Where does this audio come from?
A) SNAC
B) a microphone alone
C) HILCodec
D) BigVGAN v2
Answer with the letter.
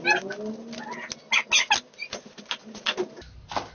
B